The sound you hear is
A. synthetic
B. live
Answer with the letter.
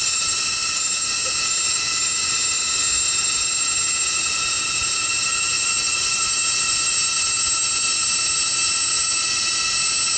B